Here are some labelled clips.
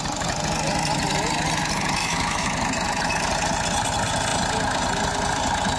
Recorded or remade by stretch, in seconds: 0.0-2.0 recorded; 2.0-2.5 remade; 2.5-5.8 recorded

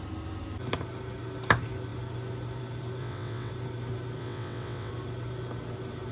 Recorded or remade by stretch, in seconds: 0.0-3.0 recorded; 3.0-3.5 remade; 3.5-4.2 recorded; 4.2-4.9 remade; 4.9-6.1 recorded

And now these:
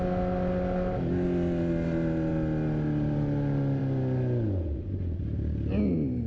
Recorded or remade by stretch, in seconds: 0.0-6.3 recorded